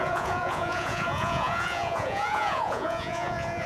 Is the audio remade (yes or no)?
yes